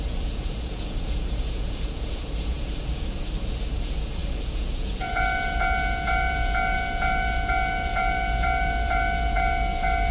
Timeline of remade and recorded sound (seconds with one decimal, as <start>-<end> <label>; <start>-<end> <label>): 0.0-10.1 remade